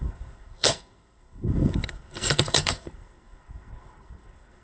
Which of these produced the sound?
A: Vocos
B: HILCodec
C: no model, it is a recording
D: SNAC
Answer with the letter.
D